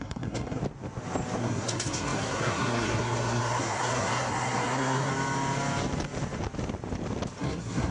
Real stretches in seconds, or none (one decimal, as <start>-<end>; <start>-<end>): 0.6-1.4; 5.1-7.4

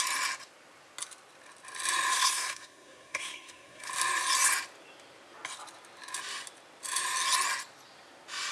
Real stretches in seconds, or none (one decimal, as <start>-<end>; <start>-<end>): 0.0-2.1; 3.9-8.5